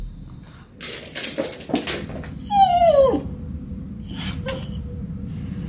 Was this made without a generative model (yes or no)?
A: yes